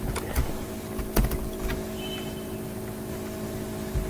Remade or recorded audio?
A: recorded